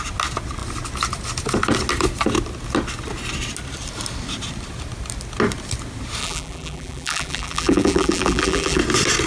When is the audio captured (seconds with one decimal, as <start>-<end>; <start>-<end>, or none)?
0.0-6.2; 8.8-9.3

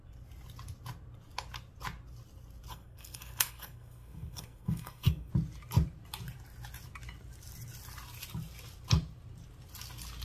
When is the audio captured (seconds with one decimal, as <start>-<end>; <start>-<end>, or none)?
0.0-2.7; 5.3-10.2